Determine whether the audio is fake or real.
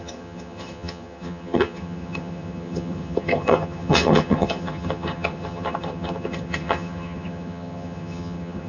fake